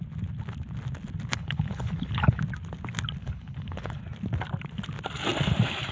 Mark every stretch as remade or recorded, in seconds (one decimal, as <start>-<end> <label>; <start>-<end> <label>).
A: 0.0-1.3 recorded; 1.3-2.4 remade; 2.4-3.2 recorded; 3.2-4.0 remade; 4.0-5.9 recorded